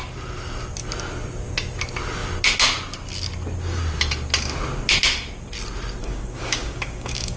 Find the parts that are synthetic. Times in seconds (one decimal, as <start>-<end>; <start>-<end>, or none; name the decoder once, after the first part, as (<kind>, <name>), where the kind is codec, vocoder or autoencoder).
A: 6.0-7.4 (codec, DAC)